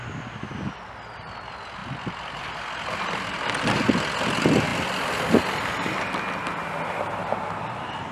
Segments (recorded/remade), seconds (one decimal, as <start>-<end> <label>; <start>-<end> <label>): 0.0-1.8 recorded; 1.8-3.8 remade; 3.8-4.7 recorded; 4.7-5.4 remade; 5.4-8.1 recorded